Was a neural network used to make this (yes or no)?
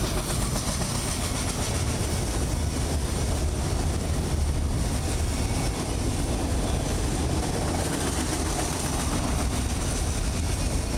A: no